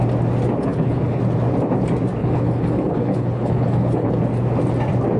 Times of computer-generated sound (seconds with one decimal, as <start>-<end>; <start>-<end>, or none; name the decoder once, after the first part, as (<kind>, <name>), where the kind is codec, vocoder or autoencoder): 0.7-1.2 (codec, HILCodec); 2.2-4.1